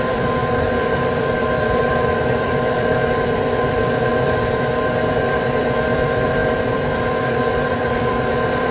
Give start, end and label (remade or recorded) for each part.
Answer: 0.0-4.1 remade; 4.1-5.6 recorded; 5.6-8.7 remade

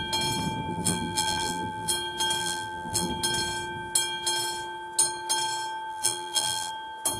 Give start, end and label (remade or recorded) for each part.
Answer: 0.0-0.7 recorded; 0.7-1.9 remade; 1.9-2.4 recorded; 2.4-3.1 remade; 3.1-5.9 recorded; 5.9-6.7 remade; 6.7-7.2 recorded

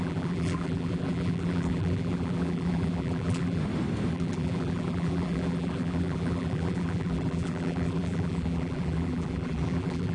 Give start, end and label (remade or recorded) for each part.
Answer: 0.0-3.6 remade; 3.6-4.1 recorded; 4.1-10.1 remade

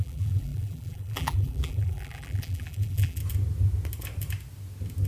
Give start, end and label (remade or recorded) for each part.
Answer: 0.0-3.2 remade; 3.2-5.1 recorded